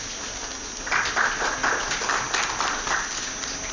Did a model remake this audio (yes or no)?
no